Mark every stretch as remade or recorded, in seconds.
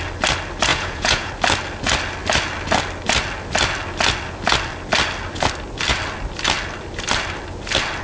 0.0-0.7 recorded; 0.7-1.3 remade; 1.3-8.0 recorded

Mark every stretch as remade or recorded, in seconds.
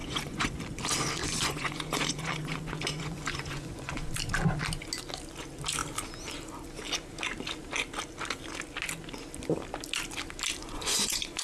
0.0-0.6 remade; 0.6-1.2 recorded; 1.2-4.1 remade; 4.1-10.6 recorded; 10.6-11.4 remade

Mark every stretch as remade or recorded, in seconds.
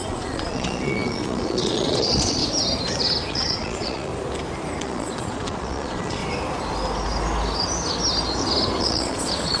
0.0-2.4 remade; 2.4-3.3 recorded; 3.3-4.1 remade; 4.1-4.8 recorded; 4.8-6.2 remade; 6.2-8.8 recorded; 8.8-9.6 remade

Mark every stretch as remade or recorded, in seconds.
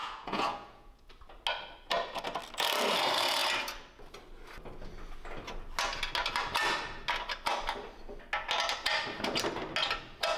0.0-1.1 remade; 1.1-10.4 recorded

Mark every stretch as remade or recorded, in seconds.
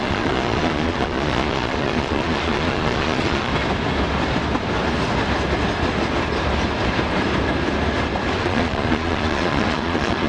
0.0-3.5 remade; 3.5-8.4 recorded; 8.4-10.3 remade